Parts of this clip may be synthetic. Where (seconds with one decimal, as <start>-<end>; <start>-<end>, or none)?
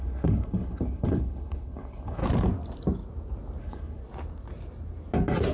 0.0-2.2; 3.6-4.0